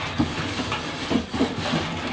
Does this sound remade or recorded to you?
recorded